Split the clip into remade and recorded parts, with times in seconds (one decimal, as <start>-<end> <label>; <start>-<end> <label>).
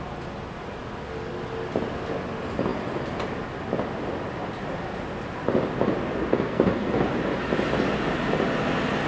0.0-6.3 recorded; 6.3-7.1 remade; 7.1-9.1 recorded